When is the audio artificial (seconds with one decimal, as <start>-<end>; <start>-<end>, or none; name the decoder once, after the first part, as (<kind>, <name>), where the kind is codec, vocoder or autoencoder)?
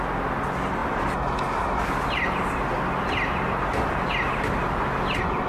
none